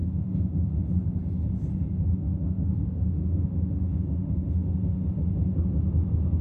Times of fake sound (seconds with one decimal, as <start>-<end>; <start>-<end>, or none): 0.0-0.8; 2.1-5.1

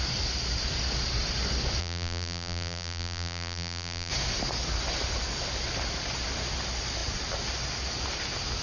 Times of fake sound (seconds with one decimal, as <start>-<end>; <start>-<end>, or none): 1.8-4.1

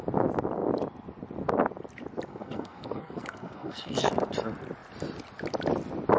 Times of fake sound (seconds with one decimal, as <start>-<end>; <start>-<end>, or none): 2.3-4.1

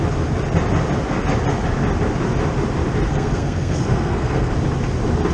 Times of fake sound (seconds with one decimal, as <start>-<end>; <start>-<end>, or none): 3.1-4.5